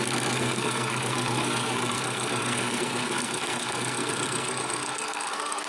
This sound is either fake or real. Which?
fake